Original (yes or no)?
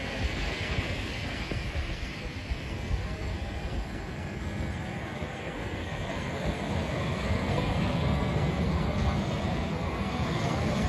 no